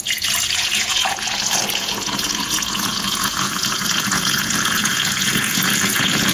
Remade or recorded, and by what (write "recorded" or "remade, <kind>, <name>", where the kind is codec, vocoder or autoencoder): remade, vocoder, Vocos